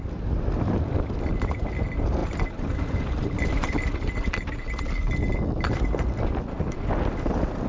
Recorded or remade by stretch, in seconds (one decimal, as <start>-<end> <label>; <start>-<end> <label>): 0.0-7.7 recorded